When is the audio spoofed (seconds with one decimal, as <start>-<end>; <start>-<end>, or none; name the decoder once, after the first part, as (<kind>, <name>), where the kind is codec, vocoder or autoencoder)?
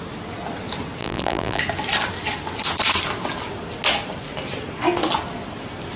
1.0-1.6 (vocoder, BigVGAN v2)